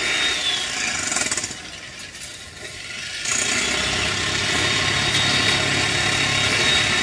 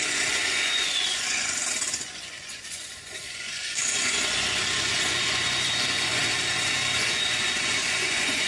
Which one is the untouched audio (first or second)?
first